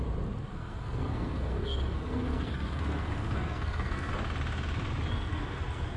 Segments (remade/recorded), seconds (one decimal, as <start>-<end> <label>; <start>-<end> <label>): 0.0-0.5 recorded; 0.5-4.1 remade; 4.1-5.1 recorded; 5.1-6.0 remade